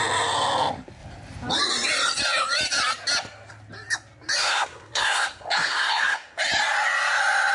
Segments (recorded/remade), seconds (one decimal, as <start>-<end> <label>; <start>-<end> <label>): 0.0-4.4 recorded; 4.4-6.4 remade; 6.4-7.5 recorded